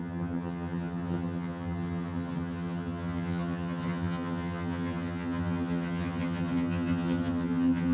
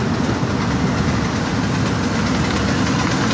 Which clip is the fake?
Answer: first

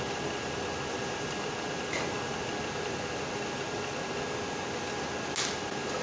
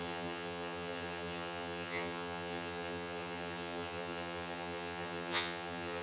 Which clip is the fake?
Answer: second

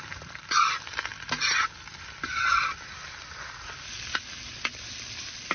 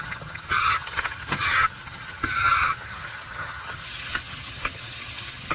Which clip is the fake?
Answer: second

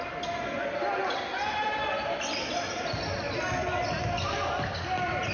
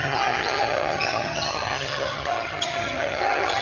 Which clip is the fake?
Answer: second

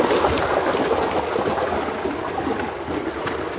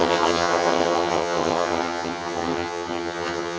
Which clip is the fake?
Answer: second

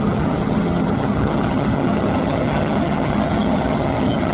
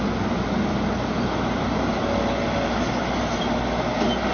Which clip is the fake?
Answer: first